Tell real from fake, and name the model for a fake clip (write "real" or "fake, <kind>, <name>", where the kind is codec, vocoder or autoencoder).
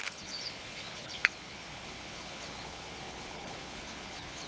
fake, codec, HILCodec